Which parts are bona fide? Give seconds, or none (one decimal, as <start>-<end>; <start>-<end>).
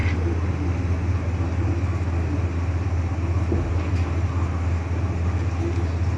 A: 0.0-6.2